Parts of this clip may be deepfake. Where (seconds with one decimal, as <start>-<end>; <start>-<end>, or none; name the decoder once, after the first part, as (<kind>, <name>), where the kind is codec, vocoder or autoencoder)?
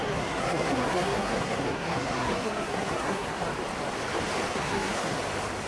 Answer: 0.0-3.4 (codec, SNAC); 4.5-5.2